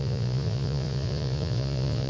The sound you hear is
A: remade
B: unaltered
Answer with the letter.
A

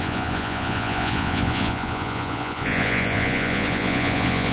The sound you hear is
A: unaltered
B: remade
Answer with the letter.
B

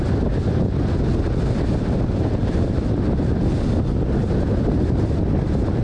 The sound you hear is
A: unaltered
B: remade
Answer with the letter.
A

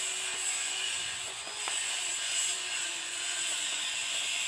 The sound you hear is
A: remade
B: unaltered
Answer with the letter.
A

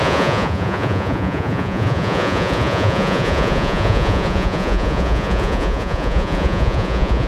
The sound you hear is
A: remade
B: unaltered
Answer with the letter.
A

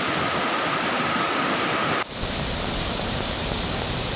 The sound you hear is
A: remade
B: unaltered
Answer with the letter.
B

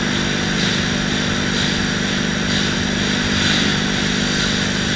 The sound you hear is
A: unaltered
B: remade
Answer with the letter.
A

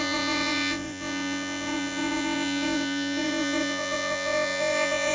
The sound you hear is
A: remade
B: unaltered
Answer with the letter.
A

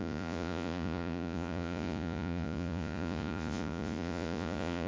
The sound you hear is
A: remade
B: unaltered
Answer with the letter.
A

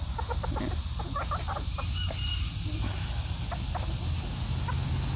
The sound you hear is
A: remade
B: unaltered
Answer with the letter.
B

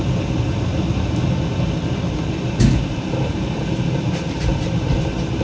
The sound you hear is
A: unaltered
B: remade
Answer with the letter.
A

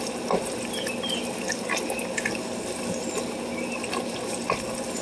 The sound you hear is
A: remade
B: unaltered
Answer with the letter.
B